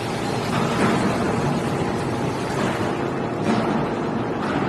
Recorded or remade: recorded